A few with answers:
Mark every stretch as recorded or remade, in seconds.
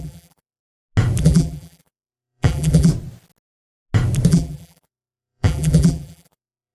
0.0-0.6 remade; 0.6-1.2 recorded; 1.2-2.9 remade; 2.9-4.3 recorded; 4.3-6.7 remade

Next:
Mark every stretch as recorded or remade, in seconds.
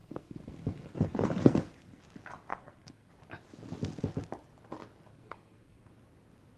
0.0-2.0 remade; 2.0-2.5 recorded; 2.5-3.1 remade; 3.1-5.1 recorded; 5.1-5.9 remade; 5.9-6.6 recorded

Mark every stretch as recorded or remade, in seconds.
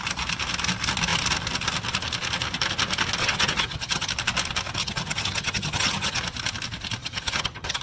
0.0-3.2 recorded; 3.2-4.1 remade; 4.1-4.8 recorded; 4.8-6.2 remade; 6.2-7.0 recorded; 7.0-7.8 remade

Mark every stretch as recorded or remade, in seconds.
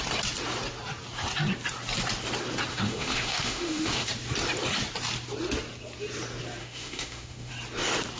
0.0-2.7 recorded; 2.7-4.1 remade; 4.1-6.6 recorded; 6.6-7.5 remade; 7.5-8.2 recorded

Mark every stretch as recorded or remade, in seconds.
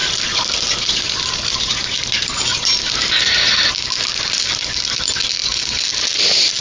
0.0-6.6 recorded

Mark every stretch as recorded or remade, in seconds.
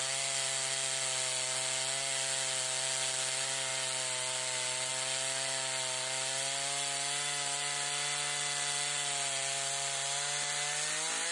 0.0-11.3 recorded